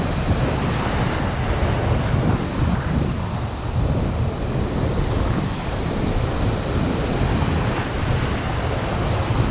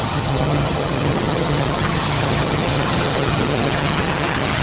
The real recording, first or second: first